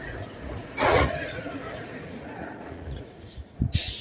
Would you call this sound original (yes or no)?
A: no